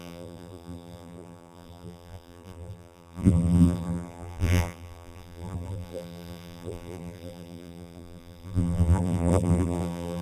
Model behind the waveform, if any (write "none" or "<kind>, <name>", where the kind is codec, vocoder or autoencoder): vocoder, BigVGAN v2